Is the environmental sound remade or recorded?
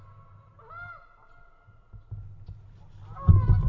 recorded